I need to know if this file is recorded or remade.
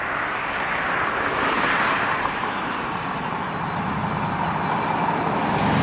recorded